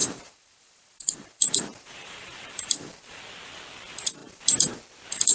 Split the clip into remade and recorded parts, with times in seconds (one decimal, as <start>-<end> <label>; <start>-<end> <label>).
0.0-3.2 remade; 3.2-4.2 recorded; 4.2-4.8 remade; 4.8-5.3 recorded